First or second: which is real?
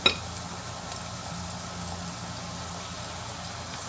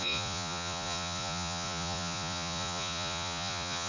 first